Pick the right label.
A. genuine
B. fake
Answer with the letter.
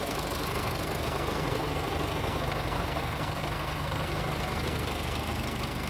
B